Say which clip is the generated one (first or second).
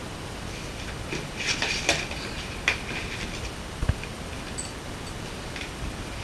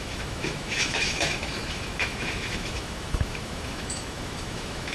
second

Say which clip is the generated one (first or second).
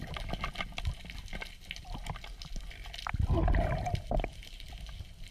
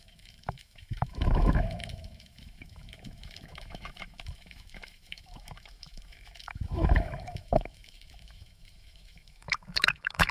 second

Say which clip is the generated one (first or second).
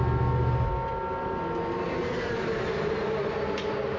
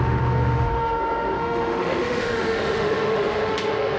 second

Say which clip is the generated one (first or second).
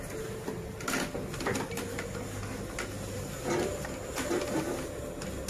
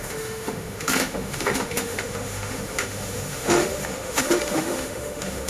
second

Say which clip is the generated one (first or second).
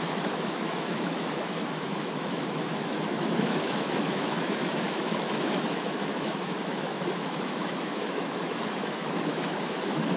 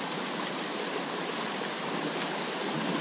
first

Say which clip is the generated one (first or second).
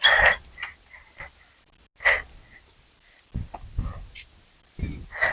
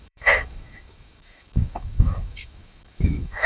second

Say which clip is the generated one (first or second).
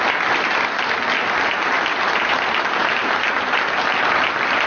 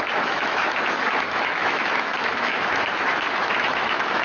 second